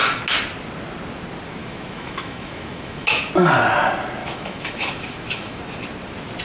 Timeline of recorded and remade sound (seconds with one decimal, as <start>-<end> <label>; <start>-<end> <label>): 0.0-1.6 recorded; 1.6-3.3 remade; 3.3-4.2 recorded; 4.2-5.6 remade; 5.6-6.4 recorded